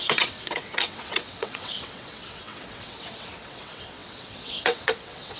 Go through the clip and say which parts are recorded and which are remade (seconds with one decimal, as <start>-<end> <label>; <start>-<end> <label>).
0.0-5.4 remade